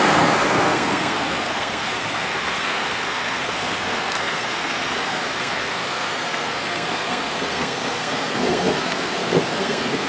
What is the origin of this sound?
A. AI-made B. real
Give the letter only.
A